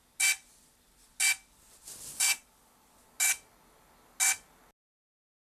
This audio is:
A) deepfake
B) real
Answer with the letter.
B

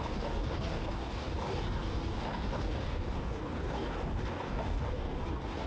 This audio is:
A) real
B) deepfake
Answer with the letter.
B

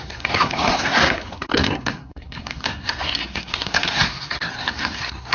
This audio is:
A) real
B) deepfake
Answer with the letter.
B